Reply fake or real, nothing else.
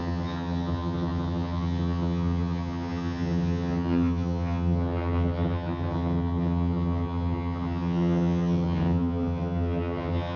fake